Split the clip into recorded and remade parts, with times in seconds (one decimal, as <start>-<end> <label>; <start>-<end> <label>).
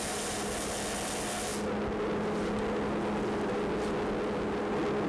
0.0-5.1 recorded